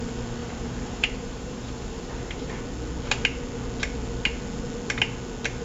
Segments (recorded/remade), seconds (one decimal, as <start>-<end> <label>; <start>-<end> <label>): 0.0-0.4 recorded; 0.4-2.6 remade; 2.6-5.6 recorded